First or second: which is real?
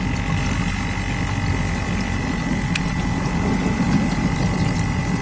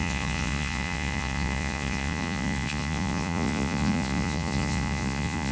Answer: first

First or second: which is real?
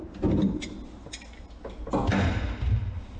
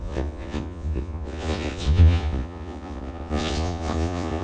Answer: first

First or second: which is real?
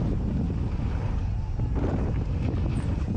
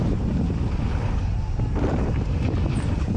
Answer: first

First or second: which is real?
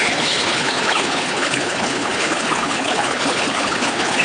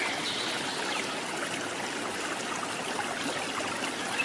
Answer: second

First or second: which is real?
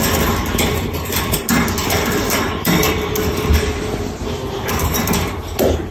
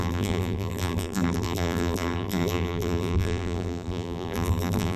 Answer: first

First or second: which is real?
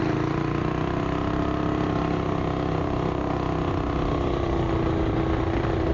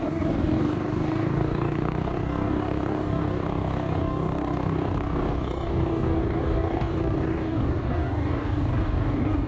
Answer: first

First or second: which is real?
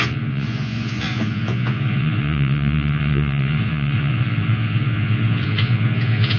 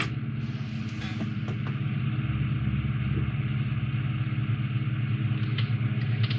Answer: second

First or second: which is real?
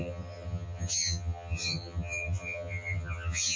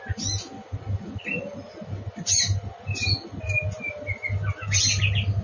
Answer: second